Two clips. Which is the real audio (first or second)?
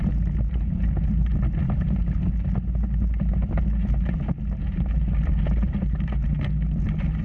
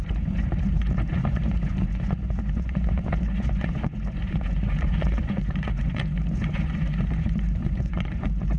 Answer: first